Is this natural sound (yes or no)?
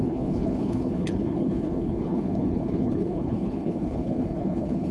no